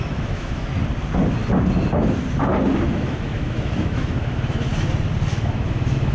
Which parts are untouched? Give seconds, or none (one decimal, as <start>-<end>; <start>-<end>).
0.7-2.9; 4.7-5.3